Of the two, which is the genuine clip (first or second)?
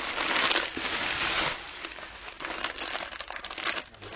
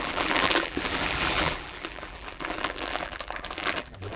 first